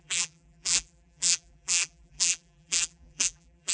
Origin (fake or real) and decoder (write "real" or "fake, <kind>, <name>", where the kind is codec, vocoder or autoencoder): fake, vocoder, BigVGAN v2